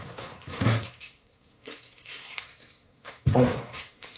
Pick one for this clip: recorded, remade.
remade